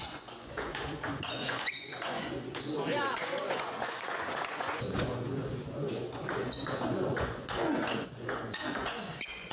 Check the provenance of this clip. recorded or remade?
remade